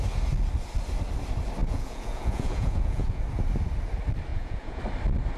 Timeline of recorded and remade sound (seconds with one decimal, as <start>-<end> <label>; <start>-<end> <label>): 0.0-1.6 recorded; 1.6-3.2 remade; 3.2-4.3 recorded; 4.3-4.8 remade; 4.8-5.4 recorded